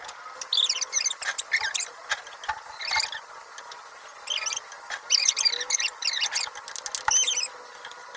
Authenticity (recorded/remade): recorded